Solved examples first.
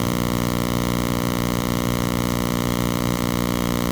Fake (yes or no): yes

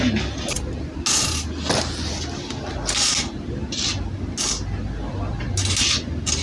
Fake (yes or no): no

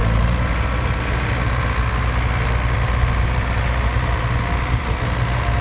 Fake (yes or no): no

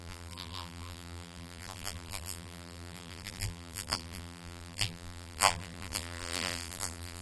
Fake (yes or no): yes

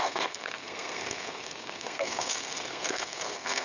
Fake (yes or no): yes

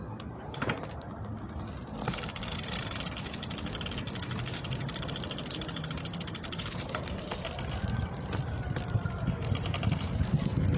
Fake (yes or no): yes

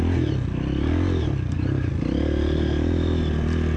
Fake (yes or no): no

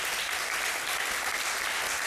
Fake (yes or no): no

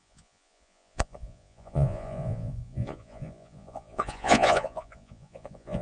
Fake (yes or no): yes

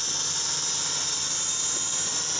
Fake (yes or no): no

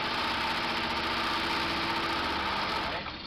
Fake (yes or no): no